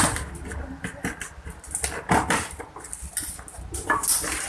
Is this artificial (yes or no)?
no